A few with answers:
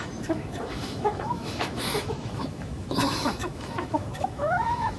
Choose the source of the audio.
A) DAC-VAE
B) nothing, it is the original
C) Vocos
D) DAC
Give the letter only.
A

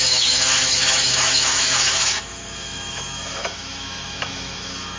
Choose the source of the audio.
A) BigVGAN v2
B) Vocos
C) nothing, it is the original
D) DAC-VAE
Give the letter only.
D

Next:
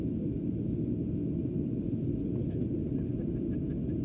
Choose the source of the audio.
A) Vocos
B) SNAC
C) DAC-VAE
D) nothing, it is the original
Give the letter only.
D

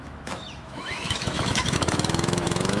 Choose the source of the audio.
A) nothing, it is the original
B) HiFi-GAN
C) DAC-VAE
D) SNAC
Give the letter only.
C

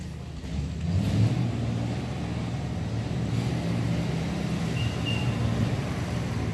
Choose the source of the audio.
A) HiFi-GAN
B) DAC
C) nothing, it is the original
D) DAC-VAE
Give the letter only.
C